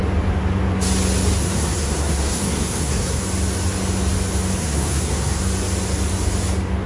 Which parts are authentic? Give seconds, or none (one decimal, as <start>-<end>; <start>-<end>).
0.0-1.4; 3.2-4.6; 5.4-6.9